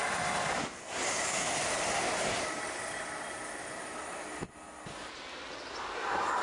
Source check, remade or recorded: recorded